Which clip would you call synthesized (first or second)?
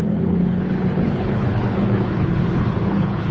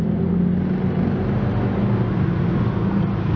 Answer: first